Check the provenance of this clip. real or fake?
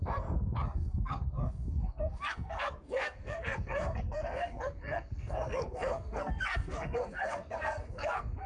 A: fake